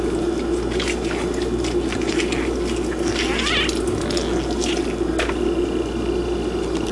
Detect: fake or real real